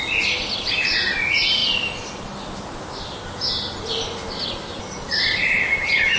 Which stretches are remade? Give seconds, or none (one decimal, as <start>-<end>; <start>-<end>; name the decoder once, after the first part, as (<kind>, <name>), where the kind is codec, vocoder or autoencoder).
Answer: none